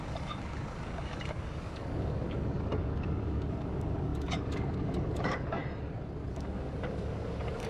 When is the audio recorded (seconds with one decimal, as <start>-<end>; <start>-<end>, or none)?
5.6-6.3